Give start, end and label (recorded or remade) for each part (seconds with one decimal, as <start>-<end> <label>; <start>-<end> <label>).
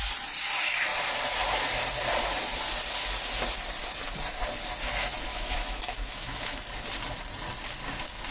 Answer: 0.0-5.3 recorded; 5.3-6.7 remade; 6.7-8.3 recorded